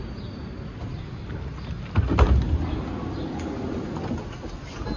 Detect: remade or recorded recorded